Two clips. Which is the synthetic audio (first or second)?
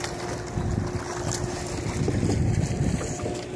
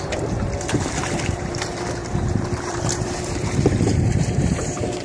second